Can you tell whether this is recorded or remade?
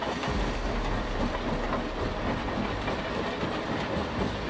recorded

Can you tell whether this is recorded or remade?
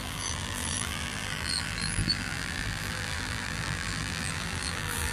remade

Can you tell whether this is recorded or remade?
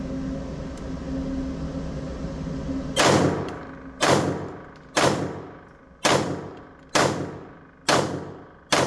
recorded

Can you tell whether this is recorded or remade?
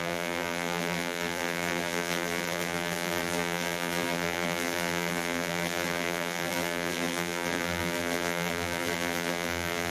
remade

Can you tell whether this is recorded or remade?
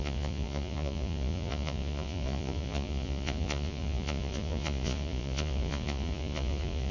remade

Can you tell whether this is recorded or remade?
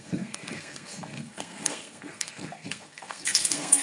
remade